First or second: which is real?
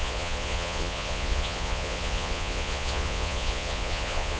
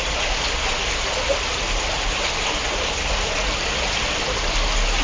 second